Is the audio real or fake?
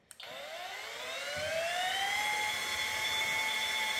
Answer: real